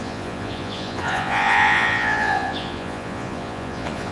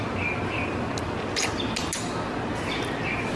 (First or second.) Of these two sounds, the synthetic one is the first